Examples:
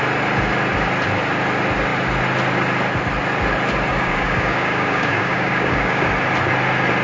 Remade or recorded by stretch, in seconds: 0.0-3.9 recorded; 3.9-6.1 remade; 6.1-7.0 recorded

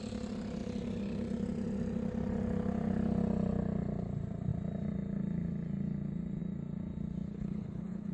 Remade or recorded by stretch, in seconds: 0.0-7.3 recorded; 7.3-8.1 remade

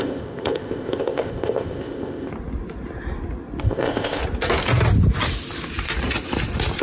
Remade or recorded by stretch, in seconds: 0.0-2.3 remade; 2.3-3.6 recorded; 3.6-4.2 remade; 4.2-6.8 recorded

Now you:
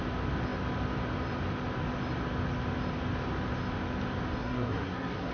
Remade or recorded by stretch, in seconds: 0.0-4.4 recorded; 4.4-5.3 remade

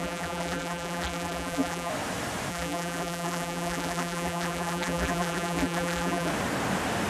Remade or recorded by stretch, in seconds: 0.0-1.9 remade; 1.9-2.5 recorded; 2.5-6.3 remade; 6.3-7.1 recorded